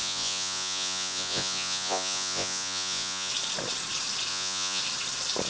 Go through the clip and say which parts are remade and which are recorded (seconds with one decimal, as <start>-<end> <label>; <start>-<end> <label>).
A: 0.0-3.3 remade; 3.3-4.3 recorded; 4.3-4.8 remade; 4.8-5.5 recorded